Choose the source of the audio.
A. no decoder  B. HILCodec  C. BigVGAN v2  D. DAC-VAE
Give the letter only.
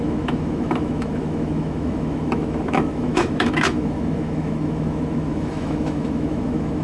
D